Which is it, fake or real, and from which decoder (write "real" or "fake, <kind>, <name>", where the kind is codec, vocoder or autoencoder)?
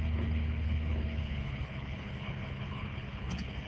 fake, codec, HILCodec